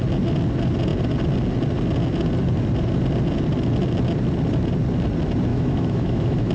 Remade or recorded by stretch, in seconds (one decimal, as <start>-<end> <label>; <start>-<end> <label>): 0.0-5.5 recorded; 5.5-6.5 remade

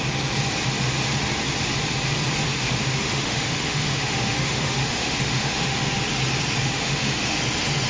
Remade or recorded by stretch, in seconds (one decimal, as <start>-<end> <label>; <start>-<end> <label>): 0.0-2.5 recorded; 2.5-5.9 remade; 5.9-6.6 recorded; 6.6-7.4 remade; 7.4-7.9 recorded

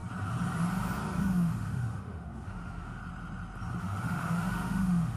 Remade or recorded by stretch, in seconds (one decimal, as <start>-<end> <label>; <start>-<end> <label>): 0.0-1.2 recorded; 1.2-3.0 remade; 3.0-3.8 recorded; 3.8-5.2 remade

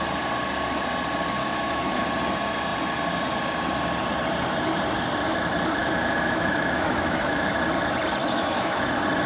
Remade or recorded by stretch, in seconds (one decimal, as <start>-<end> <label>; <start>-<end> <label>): 0.0-1.4 recorded; 1.4-2.0 remade; 2.0-5.8 recorded; 5.8-7.5 remade; 7.5-8.2 recorded; 8.2-8.8 remade; 8.8-9.3 recorded

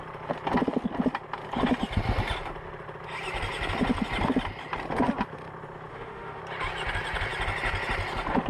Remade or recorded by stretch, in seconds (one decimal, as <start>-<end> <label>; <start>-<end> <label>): 0.0-5.9 recorded; 5.9-6.4 remade; 6.4-8.5 recorded

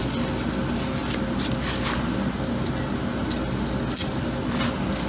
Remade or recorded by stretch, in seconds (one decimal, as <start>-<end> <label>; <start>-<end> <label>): 0.0-5.1 recorded

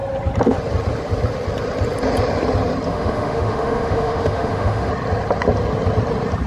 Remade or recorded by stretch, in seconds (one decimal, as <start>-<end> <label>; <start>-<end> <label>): 0.0-2.9 recorded; 2.9-4.9 remade; 4.9-6.5 recorded

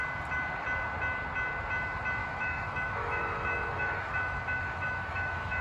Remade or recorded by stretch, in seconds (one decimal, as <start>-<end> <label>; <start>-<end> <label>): 0.0-2.2 recorded; 2.2-5.6 remade